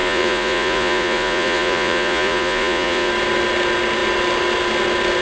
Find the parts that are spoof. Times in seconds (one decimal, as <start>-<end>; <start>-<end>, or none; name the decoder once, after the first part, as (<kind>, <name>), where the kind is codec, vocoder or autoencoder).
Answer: 0.0-3.1 (vocoder, Vocos)

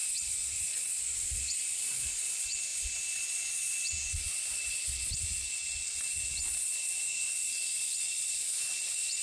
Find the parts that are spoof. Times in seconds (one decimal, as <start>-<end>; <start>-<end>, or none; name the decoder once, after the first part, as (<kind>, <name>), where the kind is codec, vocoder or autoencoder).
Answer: 0.0-9.2 (vocoder, Vocos)

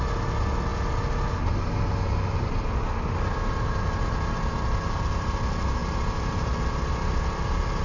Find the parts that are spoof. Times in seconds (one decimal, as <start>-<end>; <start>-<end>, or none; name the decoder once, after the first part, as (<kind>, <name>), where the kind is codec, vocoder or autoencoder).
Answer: none